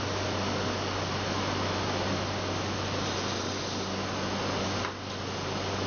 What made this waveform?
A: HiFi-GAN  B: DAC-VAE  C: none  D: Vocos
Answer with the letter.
C